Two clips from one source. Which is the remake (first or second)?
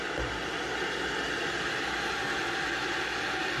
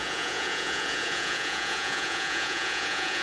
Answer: second